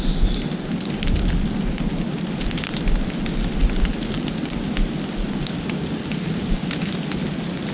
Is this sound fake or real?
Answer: real